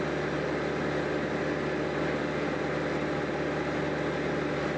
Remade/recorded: recorded